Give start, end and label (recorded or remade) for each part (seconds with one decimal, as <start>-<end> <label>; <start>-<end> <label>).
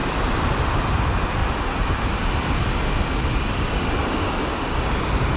0.0-1.4 remade; 1.4-2.2 recorded; 2.2-4.0 remade; 4.0-4.9 recorded; 4.9-5.4 remade